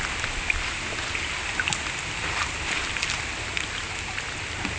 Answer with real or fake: real